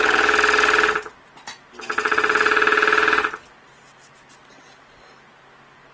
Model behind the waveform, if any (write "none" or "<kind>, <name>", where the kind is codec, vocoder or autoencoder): none